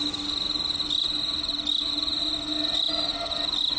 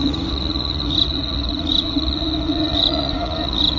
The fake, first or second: second